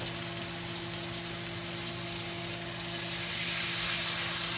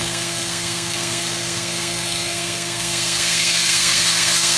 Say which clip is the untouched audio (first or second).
first